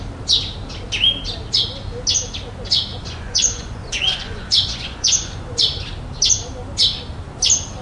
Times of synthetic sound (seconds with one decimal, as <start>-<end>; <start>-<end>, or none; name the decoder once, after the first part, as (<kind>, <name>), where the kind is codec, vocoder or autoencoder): 2.9-5.6 (vocoder, Vocos)